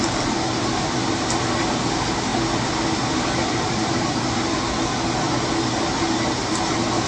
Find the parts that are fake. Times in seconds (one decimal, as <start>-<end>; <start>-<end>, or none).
none